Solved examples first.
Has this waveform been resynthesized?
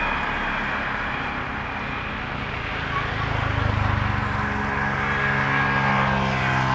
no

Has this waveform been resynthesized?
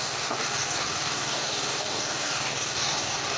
yes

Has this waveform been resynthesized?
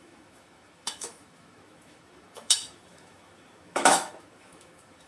yes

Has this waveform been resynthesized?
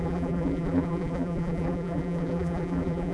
yes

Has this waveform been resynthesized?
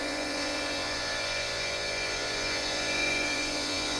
yes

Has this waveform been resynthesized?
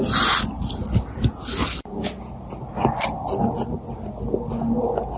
no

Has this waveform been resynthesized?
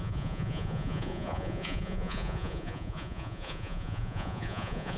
yes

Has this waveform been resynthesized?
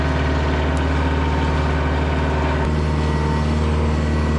no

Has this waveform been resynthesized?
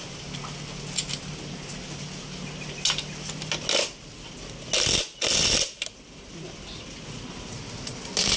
no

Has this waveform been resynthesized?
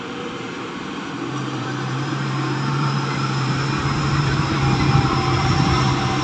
yes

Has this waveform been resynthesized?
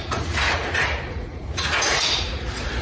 yes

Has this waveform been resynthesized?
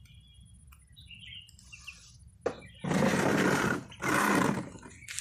no